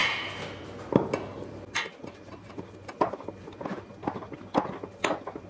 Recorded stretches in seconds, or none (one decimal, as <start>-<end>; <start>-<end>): 0.0-5.5